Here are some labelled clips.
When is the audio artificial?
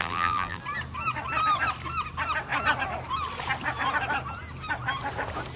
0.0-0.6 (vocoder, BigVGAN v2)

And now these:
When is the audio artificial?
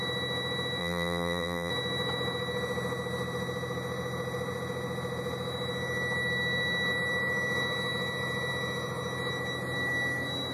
0.8-1.7 (vocoder, BigVGAN v2)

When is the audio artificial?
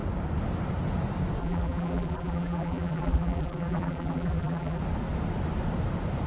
1.4-4.8 (vocoder, BigVGAN v2)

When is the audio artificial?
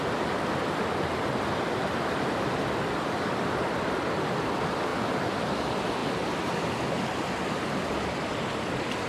none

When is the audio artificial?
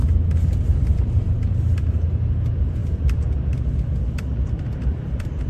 1.2-2.1 (vocoder, BigVGAN v2); 2.8-5.5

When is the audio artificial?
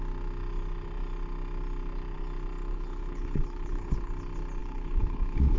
2.7-4.1 (codec, HILCodec); 4.6-5.6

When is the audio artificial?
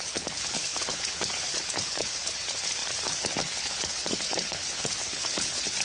0.0-5.8 (codec, HILCodec)